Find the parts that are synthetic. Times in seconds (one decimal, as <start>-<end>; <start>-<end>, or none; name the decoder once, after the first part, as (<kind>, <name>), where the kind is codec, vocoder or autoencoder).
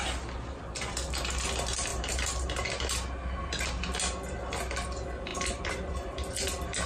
none